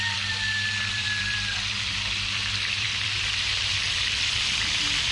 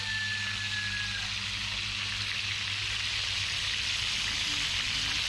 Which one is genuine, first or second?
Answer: second